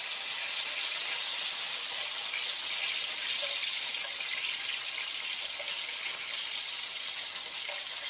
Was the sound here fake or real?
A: real